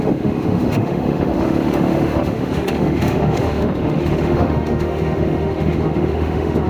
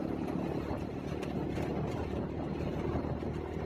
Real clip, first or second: second